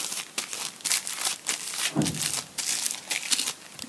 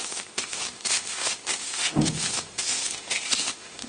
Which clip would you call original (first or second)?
first